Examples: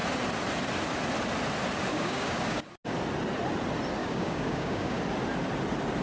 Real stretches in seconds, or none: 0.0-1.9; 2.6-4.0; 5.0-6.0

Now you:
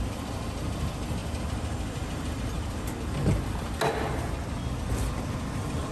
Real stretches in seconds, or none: 0.0-5.9

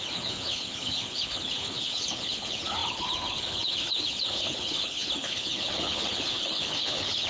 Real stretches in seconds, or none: none